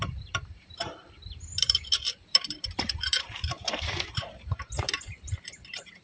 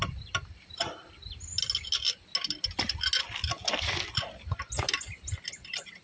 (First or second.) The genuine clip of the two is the second